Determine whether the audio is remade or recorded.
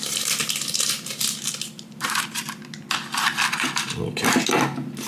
recorded